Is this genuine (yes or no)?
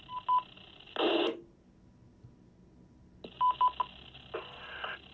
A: yes